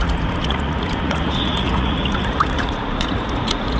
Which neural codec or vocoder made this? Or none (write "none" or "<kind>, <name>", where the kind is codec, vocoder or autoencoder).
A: vocoder, Vocos